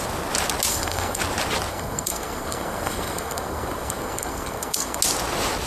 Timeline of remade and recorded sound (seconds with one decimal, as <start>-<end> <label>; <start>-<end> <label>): 0.0-0.7 recorded; 0.7-1.2 remade; 1.2-1.7 recorded; 1.7-5.0 remade; 5.0-5.7 recorded